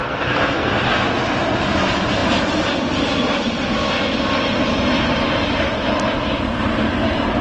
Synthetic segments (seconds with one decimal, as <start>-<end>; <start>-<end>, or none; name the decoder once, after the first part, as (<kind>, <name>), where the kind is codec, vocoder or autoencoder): 0.0-0.7 (codec, SNAC)